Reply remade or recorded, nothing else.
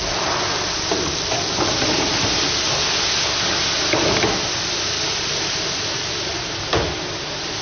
recorded